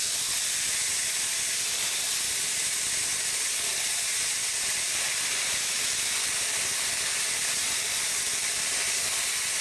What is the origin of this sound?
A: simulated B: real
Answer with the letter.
A